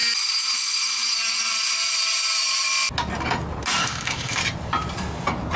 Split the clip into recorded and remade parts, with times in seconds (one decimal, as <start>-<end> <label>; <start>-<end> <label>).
0.0-3.8 recorded; 3.8-4.4 remade; 4.4-5.6 recorded